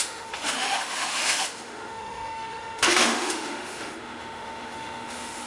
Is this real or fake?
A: fake